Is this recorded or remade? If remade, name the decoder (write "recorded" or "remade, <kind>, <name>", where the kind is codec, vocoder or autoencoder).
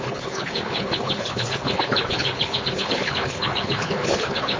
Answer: remade, codec, HILCodec